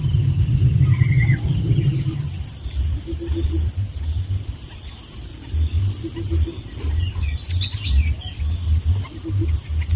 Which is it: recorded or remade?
recorded